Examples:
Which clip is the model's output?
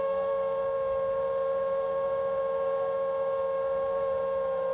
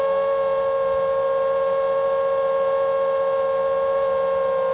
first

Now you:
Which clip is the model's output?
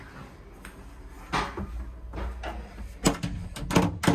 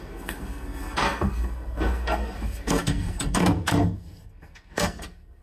second